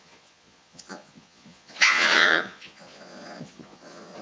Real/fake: fake